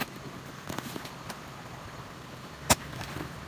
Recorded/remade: recorded